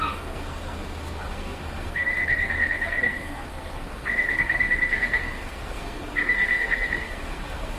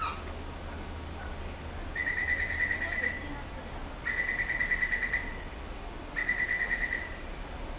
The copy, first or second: first